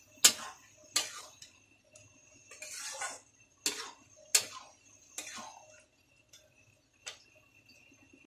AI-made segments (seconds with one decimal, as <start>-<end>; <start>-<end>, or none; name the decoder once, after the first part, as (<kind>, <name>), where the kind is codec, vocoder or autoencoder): none